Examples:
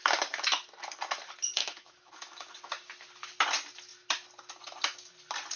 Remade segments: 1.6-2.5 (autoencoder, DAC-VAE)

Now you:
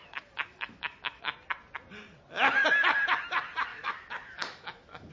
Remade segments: 0.0-1.2 (autoencoder, DAC-VAE); 3.7-5.1

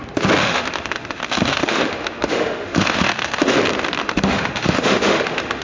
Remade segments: 0.4-3.6 (autoencoder, DAC-VAE); 4.0-5.6

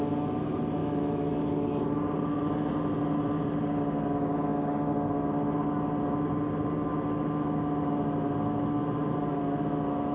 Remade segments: 0.8-1.4 (autoencoder, DAC-VAE)

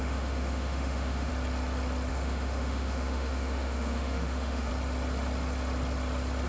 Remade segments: 0.0-1.3 (autoencoder, DAC-VAE); 2.1-4.7

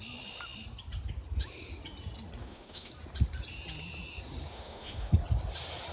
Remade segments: 2.4-2.9 (autoencoder, DAC-VAE); 4.5-5.1

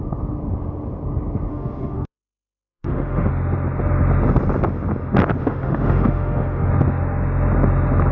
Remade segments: 1.5-3.3 (autoencoder, DAC-VAE); 5.4-6.7